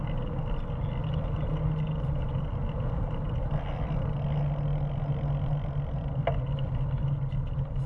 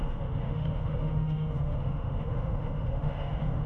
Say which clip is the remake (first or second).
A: second